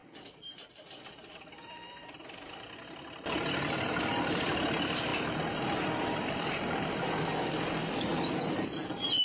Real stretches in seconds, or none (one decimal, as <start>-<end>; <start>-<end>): 5.1-6.3; 8.1-9.2